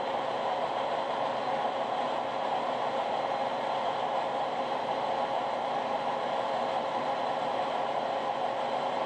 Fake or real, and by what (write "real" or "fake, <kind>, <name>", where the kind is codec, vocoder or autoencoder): real